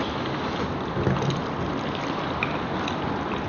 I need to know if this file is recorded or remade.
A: recorded